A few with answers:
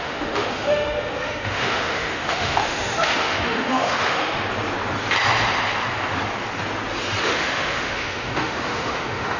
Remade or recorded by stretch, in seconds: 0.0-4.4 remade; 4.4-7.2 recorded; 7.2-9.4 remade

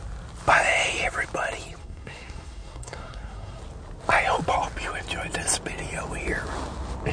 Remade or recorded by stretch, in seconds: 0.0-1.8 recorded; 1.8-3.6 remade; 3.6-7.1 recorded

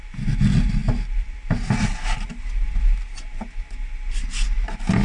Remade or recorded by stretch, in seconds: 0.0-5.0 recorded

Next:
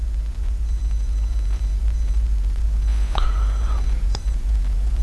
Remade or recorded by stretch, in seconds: 0.0-5.0 remade